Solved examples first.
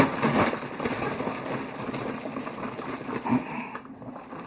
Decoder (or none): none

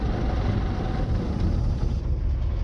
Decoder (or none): none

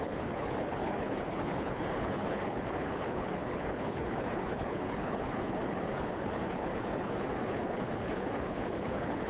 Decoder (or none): codec, HILCodec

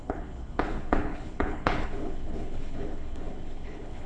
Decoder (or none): codec, HILCodec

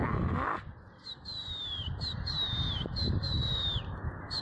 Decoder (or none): none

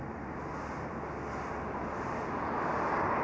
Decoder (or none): none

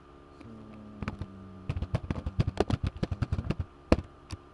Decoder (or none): none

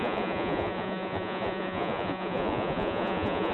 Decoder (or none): vocoder, Vocos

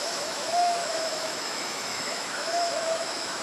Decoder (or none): autoencoder, DAC-VAE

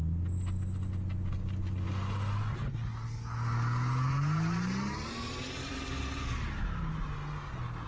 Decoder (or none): none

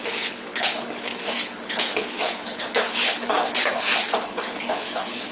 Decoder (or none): codec, HILCodec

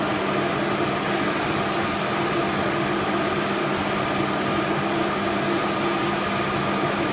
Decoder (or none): none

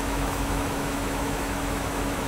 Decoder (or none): autoencoder, DAC-VAE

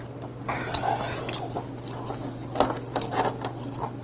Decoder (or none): none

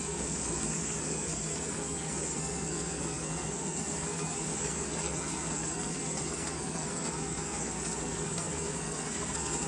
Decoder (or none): codec, SNAC